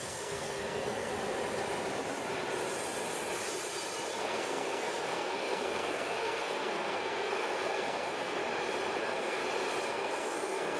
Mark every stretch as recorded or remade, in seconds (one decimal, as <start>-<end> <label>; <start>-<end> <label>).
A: 0.0-1.1 remade; 1.1-4.2 recorded; 4.2-8.4 remade; 8.4-9.0 recorded; 9.0-9.4 remade; 9.4-9.9 recorded; 9.9-10.8 remade